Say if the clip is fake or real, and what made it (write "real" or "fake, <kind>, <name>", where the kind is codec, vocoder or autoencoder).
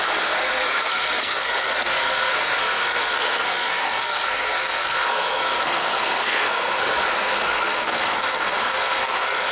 fake, codec, SNAC